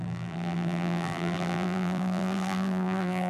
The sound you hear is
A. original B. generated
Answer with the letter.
B